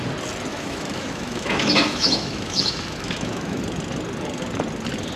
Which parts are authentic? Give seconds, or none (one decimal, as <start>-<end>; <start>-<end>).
0.0-0.5; 3.6-5.2